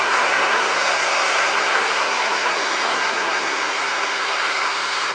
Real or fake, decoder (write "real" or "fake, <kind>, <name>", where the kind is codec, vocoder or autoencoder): fake, codec, SNAC